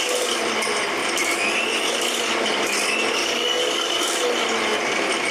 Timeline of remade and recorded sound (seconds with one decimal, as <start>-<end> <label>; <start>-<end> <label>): 0.0-3.2 recorded; 3.2-4.0 remade; 4.0-5.3 recorded